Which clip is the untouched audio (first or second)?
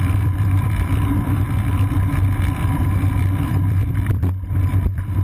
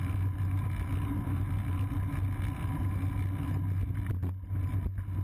second